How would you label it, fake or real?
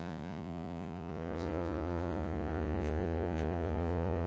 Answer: fake